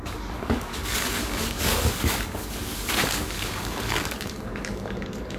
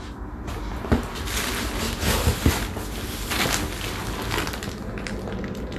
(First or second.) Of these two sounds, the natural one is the second